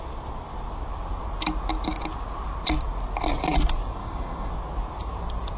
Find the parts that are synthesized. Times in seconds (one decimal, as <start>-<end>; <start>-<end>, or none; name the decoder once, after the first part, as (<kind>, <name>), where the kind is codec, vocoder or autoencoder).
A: 4.0-4.5 (codec, DAC)